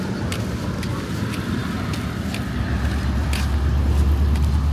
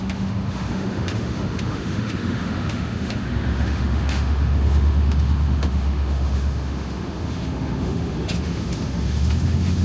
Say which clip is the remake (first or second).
second